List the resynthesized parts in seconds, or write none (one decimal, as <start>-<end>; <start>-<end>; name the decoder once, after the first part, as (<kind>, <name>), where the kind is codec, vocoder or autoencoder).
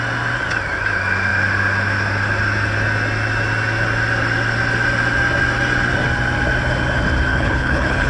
7.3-8.1 (codec, HILCodec)